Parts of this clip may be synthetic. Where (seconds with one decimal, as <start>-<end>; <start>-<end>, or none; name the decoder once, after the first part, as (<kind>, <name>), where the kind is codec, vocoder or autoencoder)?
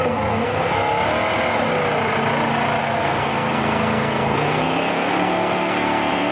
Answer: 0.0-0.8 (codec, SNAC); 2.8-6.3